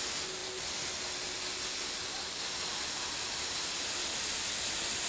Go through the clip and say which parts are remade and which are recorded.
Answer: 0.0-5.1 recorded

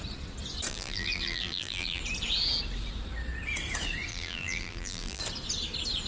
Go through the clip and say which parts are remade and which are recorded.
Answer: 0.0-0.7 recorded; 0.7-2.0 remade; 2.0-4.1 recorded; 4.1-5.2 remade; 5.2-6.1 recorded

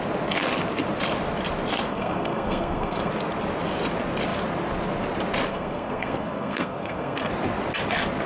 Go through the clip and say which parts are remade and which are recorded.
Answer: 0.0-1.9 recorded; 1.9-3.1 remade; 3.1-5.5 recorded; 5.5-7.3 remade; 7.3-8.3 recorded

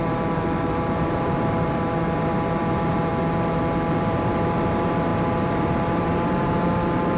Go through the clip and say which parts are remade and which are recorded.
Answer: 0.0-3.1 remade; 3.1-4.0 recorded; 4.0-7.2 remade

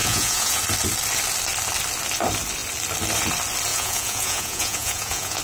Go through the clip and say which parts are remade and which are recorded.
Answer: 0.0-0.6 remade; 0.6-3.7 recorded; 3.7-5.4 remade

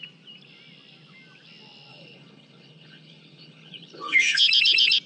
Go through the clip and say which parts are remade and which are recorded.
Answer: 0.0-1.9 recorded; 1.9-4.4 remade; 4.4-5.1 recorded